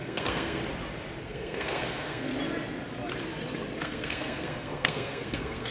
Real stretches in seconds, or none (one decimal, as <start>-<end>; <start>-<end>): 0.6-1.2; 2.3-3.8